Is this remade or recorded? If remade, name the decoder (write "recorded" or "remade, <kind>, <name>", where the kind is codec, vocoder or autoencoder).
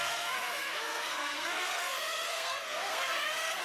remade, codec, SNAC